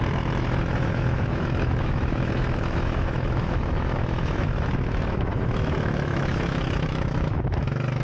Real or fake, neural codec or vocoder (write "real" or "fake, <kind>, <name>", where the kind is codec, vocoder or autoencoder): fake, autoencoder, DAC-VAE